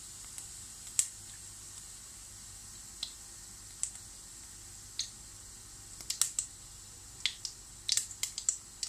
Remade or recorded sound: recorded